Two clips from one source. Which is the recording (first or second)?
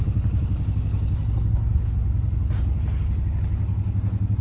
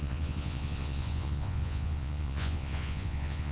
first